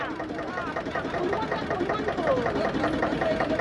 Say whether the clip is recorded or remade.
remade